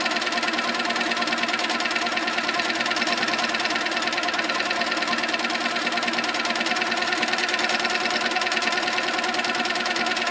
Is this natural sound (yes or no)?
yes